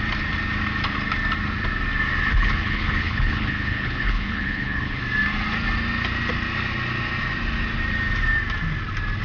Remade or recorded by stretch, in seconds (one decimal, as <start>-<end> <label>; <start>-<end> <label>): 0.0-2.3 recorded; 2.3-5.0 remade; 5.0-9.2 recorded